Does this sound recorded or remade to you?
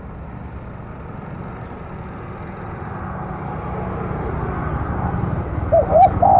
recorded